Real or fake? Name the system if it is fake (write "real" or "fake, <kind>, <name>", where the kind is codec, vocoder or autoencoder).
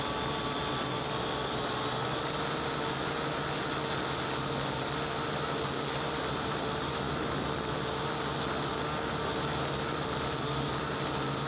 real